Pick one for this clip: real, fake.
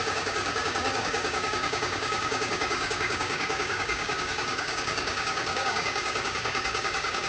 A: fake